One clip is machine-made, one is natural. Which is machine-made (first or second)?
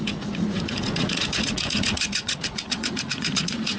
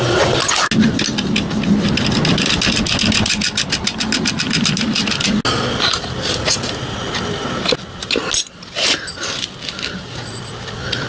first